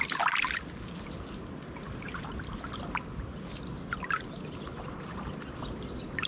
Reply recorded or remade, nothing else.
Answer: recorded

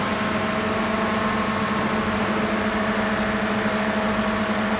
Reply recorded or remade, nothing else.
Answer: recorded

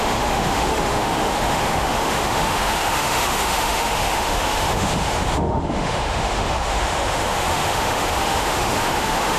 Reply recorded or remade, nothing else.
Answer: remade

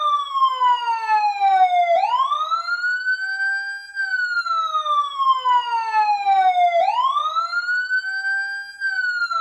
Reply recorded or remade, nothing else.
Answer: recorded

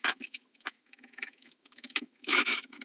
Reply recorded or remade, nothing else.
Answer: remade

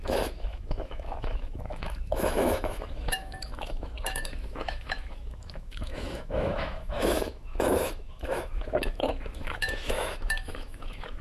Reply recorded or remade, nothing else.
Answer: remade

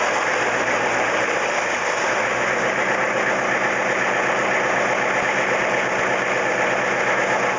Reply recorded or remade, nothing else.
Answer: recorded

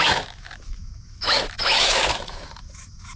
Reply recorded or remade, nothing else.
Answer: remade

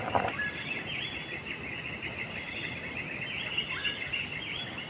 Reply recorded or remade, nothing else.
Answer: recorded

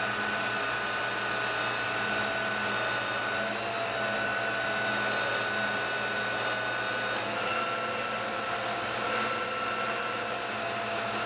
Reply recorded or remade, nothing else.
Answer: recorded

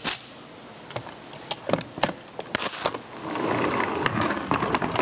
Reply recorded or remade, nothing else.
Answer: recorded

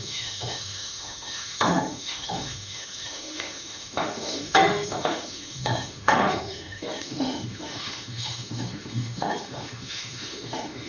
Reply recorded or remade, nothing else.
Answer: remade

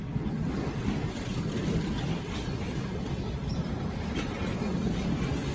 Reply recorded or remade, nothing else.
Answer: recorded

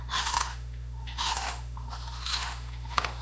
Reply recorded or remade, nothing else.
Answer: remade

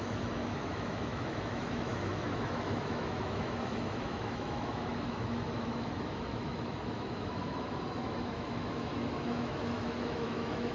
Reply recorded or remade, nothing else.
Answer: remade